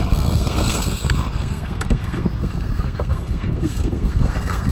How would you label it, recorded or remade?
remade